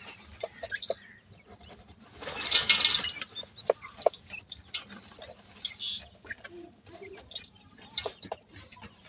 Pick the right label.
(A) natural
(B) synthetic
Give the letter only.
A